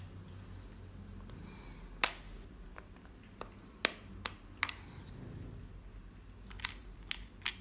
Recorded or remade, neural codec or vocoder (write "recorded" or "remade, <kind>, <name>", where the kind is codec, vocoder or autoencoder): recorded